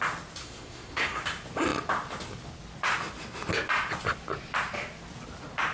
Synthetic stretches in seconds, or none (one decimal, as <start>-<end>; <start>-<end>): 0.4-1.2